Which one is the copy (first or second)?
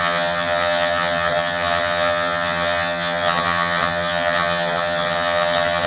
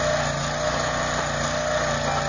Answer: first